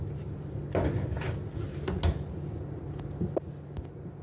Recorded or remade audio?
recorded